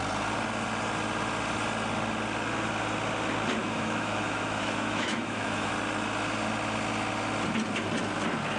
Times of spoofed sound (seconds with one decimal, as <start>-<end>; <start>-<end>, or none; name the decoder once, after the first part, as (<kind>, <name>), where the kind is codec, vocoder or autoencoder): 3.6-5.7 (autoencoder, DAC-VAE)